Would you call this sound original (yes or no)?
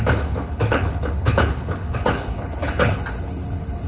no